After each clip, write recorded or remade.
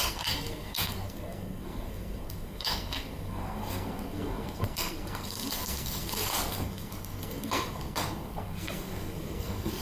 remade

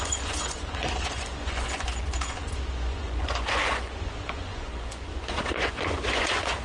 remade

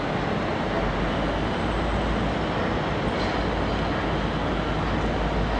recorded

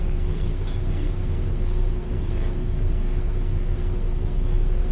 remade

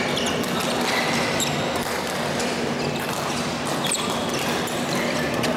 recorded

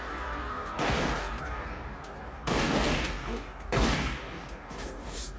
remade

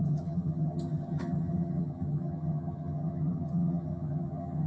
remade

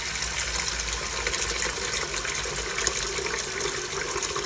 recorded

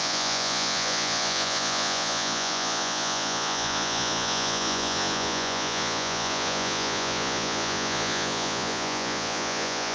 remade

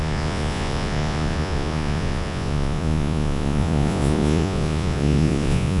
remade